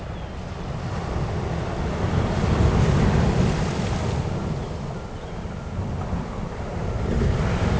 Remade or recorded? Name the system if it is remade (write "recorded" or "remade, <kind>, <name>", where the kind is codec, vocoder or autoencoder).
recorded